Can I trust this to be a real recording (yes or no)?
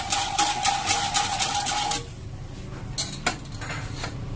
yes